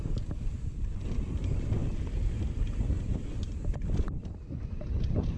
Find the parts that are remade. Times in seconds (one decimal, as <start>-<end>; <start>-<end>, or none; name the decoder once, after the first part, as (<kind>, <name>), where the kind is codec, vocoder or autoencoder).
none

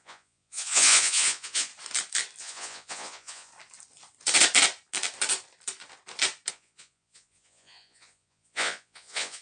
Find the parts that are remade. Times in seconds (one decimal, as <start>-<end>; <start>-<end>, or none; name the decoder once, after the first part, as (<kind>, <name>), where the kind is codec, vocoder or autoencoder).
0.0-1.7 (vocoder, Vocos); 2.4-3.5; 6.5-9.4

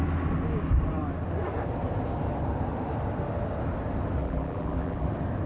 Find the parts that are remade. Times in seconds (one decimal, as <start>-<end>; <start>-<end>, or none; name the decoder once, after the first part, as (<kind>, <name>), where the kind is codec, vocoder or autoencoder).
4.2-5.1 (vocoder, BigVGAN v2)

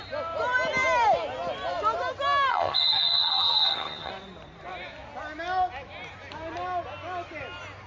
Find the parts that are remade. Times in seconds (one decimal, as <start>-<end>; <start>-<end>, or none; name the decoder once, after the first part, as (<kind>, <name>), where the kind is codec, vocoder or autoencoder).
2.5-4.1 (vocoder, HiFi-GAN)

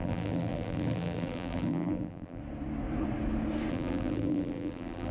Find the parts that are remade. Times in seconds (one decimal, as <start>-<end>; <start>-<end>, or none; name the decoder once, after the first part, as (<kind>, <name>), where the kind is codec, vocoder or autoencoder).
0.0-2.4 (vocoder, BigVGAN v2); 3.7-5.1

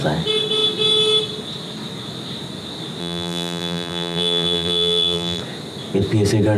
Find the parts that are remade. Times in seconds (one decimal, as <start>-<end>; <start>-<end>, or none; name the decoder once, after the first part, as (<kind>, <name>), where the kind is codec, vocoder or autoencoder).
3.0-5.4 (vocoder, BigVGAN v2)

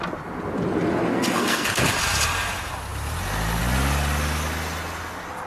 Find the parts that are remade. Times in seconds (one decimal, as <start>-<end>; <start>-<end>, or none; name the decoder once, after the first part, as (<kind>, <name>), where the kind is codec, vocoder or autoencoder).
1.1-1.9 (codec, SNAC)

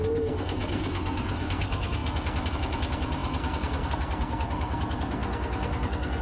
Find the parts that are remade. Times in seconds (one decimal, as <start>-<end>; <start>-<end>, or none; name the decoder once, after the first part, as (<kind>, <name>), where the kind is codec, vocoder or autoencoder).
0.0-6.2 (codec, SNAC)